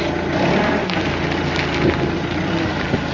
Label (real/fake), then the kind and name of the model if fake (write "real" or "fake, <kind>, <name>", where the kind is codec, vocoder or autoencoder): real